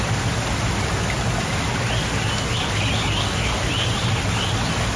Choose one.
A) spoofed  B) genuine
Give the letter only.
B